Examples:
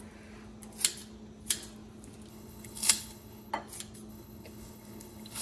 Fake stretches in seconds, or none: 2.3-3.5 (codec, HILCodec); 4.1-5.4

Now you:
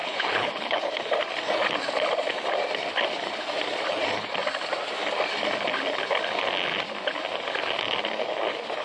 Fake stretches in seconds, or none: 0.0-0.9 (codec, HILCodec)

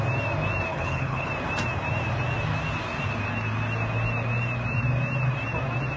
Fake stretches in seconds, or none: 0.7-1.3 (codec, HILCodec)

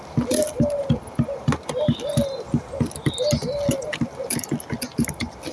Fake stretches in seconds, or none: none

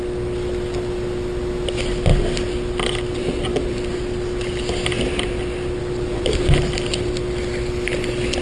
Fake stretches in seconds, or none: none